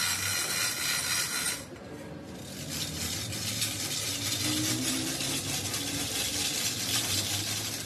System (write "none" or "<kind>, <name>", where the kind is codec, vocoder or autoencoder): none